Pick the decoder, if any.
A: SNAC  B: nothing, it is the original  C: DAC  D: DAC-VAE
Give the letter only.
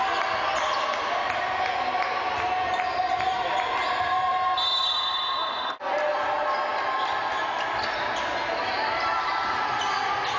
B